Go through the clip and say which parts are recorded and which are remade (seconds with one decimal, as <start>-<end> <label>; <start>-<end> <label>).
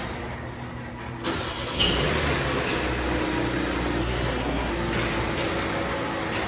0.0-4.0 recorded; 4.0-4.7 remade; 4.7-6.5 recorded